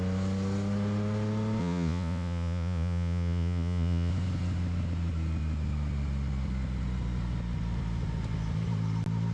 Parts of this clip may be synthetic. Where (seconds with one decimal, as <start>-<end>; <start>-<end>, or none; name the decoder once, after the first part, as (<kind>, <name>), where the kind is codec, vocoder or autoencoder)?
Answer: 1.6-4.1 (vocoder, Vocos)